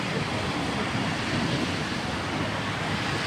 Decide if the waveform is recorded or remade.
recorded